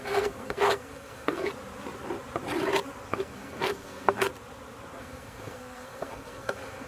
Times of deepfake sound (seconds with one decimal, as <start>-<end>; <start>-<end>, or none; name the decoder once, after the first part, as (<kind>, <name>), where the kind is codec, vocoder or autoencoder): 0.0-1.5 (codec, SNAC); 3.1-4.3; 5.0-6.9